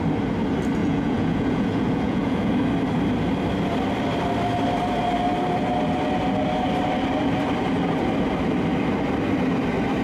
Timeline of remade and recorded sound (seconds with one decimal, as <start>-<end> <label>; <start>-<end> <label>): 0.0-0.8 recorded; 0.8-2.5 remade; 2.5-10.0 recorded